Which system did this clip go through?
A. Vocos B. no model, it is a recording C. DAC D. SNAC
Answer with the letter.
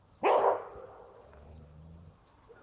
B